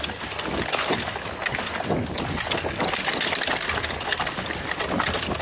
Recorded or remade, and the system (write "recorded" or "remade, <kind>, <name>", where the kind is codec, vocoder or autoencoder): recorded